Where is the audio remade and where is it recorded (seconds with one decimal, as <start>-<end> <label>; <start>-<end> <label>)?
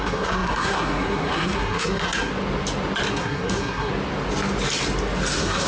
0.0-2.3 remade; 2.3-3.1 recorded; 3.1-3.9 remade; 3.9-5.3 recorded; 5.3-5.7 remade